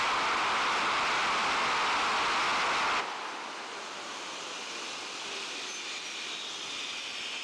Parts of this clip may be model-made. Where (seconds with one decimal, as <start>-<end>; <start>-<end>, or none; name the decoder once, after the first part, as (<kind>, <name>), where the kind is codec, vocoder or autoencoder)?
none